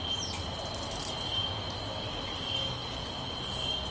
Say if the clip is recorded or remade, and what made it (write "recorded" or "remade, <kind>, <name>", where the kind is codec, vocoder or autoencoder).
recorded